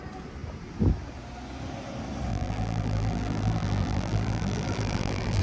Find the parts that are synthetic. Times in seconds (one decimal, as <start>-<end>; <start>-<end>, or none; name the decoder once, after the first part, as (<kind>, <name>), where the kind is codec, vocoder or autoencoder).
2.3-5.4 (vocoder, BigVGAN v2)